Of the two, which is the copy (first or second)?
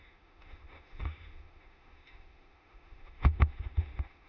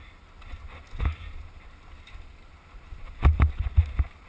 first